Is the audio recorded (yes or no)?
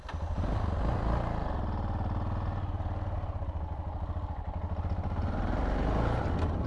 yes